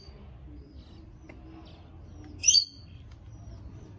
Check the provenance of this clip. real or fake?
real